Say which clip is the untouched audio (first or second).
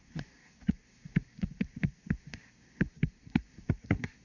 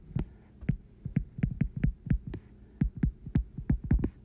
second